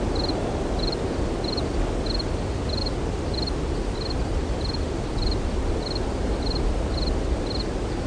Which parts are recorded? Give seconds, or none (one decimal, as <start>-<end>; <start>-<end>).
0.0-8.1